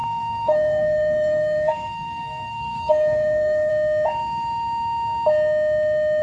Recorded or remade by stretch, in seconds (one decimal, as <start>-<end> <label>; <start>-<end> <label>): 0.0-3.7 remade; 3.7-6.2 recorded